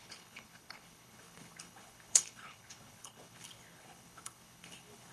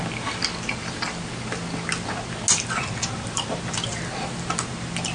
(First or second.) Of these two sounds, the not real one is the first